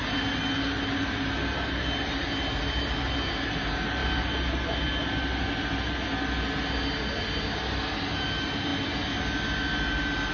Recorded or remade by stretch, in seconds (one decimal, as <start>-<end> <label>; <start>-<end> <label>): 0.0-10.3 recorded